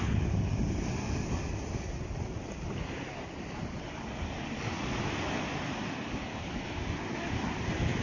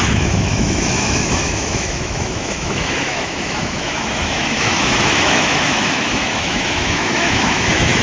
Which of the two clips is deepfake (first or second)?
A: second